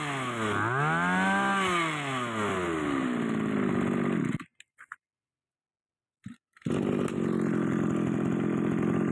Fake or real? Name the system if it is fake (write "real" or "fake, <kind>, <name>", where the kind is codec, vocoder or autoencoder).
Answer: real